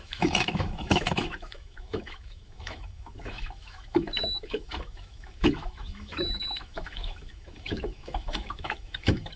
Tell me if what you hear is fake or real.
fake